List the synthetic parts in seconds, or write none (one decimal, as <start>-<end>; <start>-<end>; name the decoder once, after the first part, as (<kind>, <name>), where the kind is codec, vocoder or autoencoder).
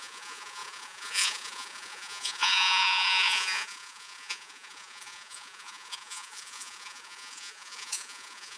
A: 0.0-8.6 (vocoder, Vocos)